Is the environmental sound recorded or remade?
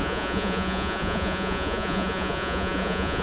remade